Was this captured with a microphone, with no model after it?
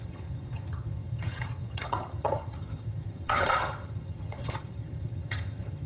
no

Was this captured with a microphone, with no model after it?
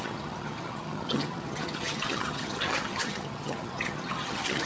no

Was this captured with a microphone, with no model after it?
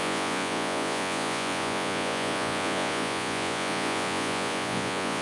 no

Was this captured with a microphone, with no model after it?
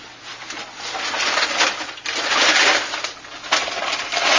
yes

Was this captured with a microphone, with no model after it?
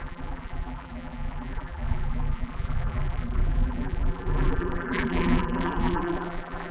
no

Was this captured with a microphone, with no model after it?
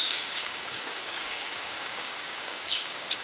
no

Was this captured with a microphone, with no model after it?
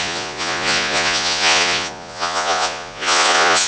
no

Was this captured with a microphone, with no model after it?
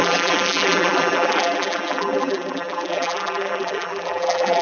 no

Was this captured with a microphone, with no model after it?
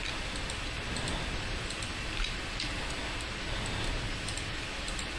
yes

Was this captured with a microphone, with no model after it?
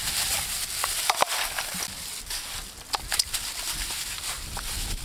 yes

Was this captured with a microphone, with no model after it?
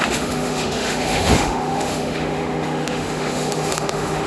no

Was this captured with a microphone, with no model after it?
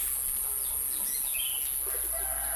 yes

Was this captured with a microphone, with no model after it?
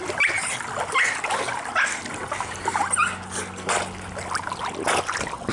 yes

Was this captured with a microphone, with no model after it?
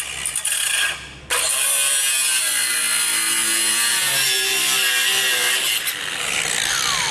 yes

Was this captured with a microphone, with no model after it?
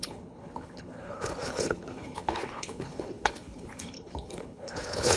no